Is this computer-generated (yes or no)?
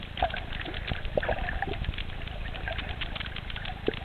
no